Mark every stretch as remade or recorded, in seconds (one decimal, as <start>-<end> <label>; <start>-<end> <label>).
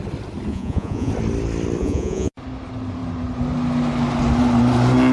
0.0-0.5 recorded; 0.5-1.1 remade; 1.1-1.8 recorded; 1.8-2.3 remade; 2.3-5.1 recorded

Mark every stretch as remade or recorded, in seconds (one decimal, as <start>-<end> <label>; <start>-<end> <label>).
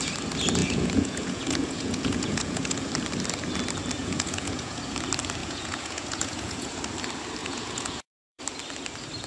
0.0-0.6 recorded; 0.6-2.8 remade; 2.8-4.0 recorded; 4.0-4.8 remade; 4.8-5.4 recorded; 5.4-6.8 remade; 6.8-7.4 recorded; 7.4-8.4 remade; 8.4-9.3 recorded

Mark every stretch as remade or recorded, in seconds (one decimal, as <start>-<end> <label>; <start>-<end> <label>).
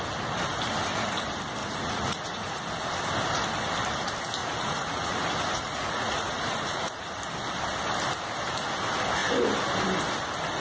0.0-1.6 recorded; 1.6-2.6 remade; 2.6-4.4 recorded; 4.4-7.2 remade; 7.2-10.6 recorded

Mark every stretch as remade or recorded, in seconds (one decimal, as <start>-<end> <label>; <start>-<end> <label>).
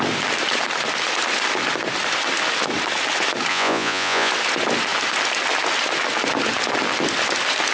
0.0-3.5 recorded; 3.5-4.3 remade; 4.3-7.7 recorded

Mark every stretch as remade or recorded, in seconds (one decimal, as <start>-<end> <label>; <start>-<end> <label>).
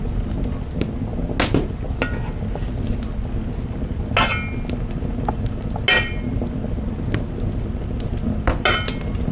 0.0-9.3 recorded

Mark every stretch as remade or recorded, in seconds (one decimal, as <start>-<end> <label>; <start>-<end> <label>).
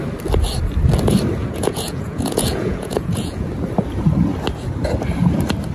0.0-1.4 recorded; 1.4-3.5 remade; 3.5-5.7 recorded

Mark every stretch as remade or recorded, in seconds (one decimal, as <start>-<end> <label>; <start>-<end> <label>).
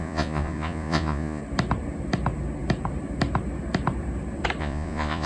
0.0-1.4 remade; 1.4-4.6 recorded; 4.6-5.3 remade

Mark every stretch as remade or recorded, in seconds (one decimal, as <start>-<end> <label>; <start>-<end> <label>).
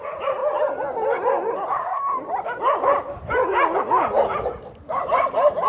0.0-5.7 recorded